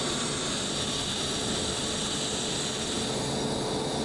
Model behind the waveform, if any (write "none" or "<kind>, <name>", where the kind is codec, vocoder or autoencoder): none